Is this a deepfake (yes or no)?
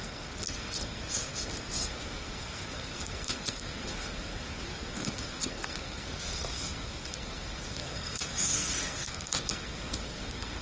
yes